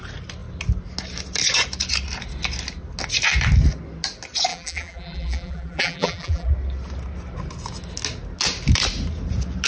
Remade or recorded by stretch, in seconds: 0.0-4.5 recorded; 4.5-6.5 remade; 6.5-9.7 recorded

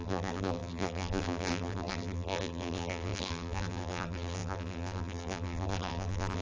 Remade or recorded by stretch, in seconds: 0.0-6.4 remade

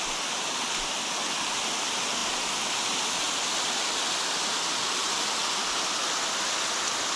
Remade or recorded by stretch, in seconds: 0.0-7.2 recorded

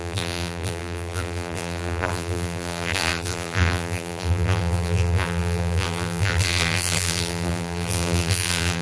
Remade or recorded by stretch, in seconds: 0.0-8.8 remade

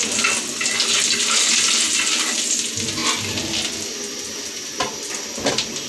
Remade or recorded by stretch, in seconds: 0.0-5.9 recorded

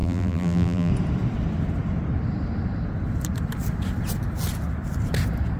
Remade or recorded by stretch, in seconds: 0.0-0.9 remade; 0.9-5.6 recorded

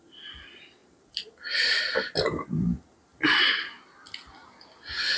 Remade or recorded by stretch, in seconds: 0.0-0.8 recorded; 0.8-1.8 remade; 1.8-3.1 recorded; 3.1-3.7 remade; 3.7-5.2 recorded